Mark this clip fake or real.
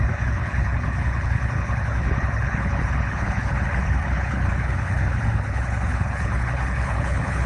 fake